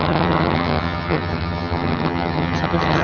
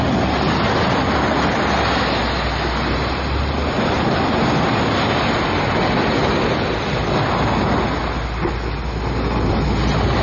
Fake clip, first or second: first